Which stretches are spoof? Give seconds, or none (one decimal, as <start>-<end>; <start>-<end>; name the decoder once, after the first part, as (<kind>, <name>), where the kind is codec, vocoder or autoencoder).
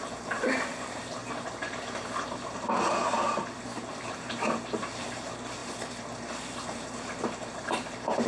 0.0-1.2 (vocoder, BigVGAN v2); 4.1-5.6; 7.2-8.3